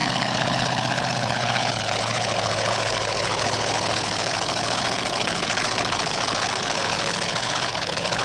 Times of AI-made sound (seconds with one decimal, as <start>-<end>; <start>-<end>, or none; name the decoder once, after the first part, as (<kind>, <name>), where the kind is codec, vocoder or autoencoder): 0.0-8.2 (codec, HILCodec)